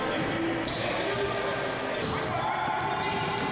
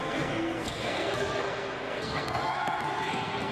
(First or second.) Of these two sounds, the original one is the first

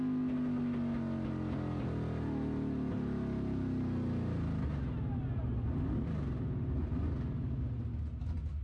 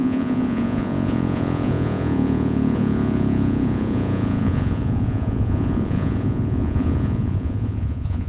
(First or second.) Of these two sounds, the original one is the first